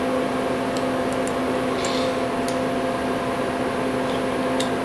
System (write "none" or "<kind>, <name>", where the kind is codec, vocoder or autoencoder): none